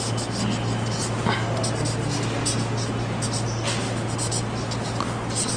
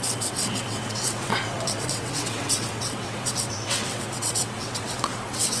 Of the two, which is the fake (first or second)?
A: second